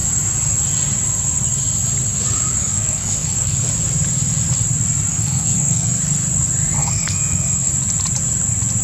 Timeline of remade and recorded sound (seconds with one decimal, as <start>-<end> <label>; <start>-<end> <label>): 0.0-2.6 recorded; 2.6-3.6 remade; 3.6-5.1 recorded; 5.1-6.0 remade; 6.0-6.8 recorded; 6.8-7.7 remade; 7.7-8.8 recorded